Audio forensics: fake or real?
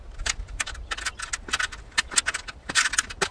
real